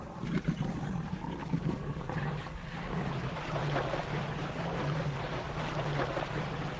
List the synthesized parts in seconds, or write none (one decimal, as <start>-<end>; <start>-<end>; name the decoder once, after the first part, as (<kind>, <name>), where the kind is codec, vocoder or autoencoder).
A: 1.4-3.1 (codec, DAC); 4.0-5.2